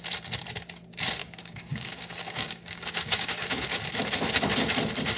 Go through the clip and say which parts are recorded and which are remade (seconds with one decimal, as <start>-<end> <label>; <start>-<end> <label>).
0.0-1.2 recorded; 1.2-3.5 remade; 3.5-5.2 recorded